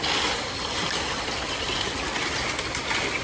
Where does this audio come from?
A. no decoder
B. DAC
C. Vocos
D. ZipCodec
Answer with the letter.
A